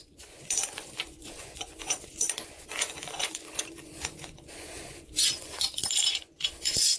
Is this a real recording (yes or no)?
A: no